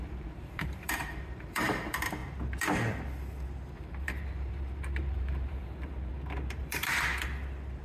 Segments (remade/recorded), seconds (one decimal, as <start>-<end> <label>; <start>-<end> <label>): 0.0-2.2 remade; 2.2-3.7 recorded; 3.7-6.1 remade; 6.1-6.6 recorded; 6.6-7.1 remade; 7.1-7.8 recorded